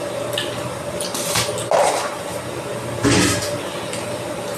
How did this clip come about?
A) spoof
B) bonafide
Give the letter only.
B